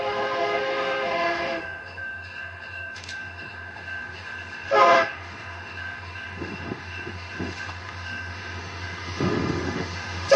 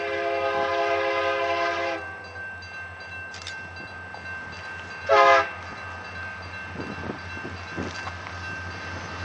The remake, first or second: first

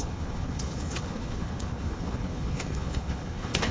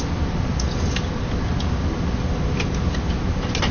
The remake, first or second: first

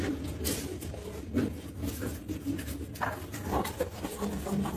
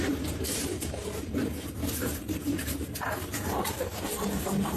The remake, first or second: second